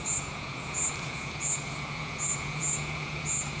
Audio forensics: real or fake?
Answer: fake